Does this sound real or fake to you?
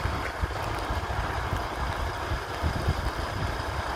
real